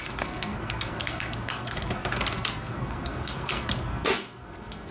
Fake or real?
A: fake